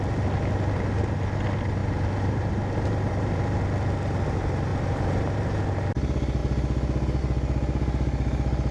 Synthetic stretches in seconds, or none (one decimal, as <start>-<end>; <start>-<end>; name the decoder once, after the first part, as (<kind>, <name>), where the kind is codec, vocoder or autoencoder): 1.8-3.6 (vocoder, BigVGAN v2); 4.7-5.6